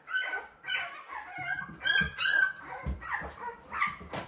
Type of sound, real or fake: fake